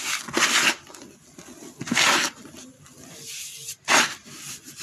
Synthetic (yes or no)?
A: no